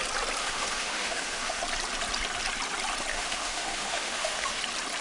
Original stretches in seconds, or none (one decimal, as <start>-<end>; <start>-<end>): 0.0-0.4; 1.6-3.1; 4.6-5.0